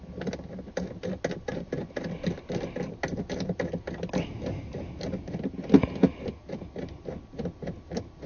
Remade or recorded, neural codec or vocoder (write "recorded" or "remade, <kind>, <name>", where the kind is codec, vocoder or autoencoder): recorded